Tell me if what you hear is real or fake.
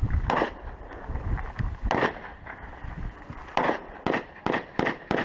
fake